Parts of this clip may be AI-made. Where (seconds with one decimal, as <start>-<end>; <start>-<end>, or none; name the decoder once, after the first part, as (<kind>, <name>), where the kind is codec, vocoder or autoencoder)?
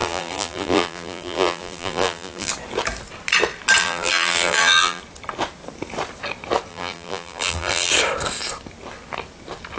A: 0.0-2.5 (vocoder, BigVGAN v2); 3.8-5.0; 6.7-7.9